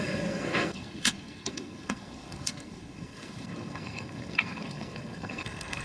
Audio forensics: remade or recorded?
remade